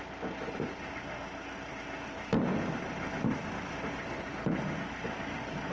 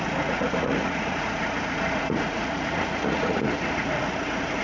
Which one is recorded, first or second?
first